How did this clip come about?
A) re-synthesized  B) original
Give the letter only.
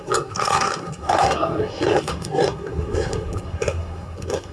A